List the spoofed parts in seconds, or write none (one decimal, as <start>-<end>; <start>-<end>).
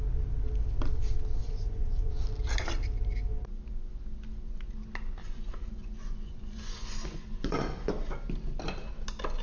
1.4-2.1; 5.2-7.9